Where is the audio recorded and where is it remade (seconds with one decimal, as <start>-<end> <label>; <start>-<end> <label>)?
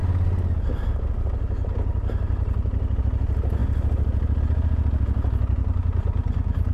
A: 0.0-6.7 recorded